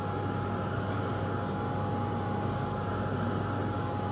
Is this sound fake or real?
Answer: real